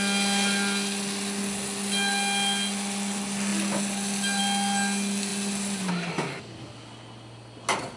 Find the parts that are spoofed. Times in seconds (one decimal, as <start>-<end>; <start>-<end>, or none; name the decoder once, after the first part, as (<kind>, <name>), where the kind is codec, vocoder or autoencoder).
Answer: none